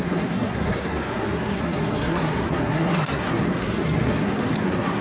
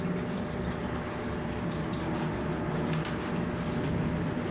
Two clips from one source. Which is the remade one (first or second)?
first